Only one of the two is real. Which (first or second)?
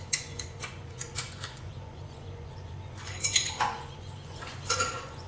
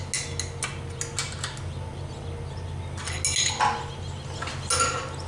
second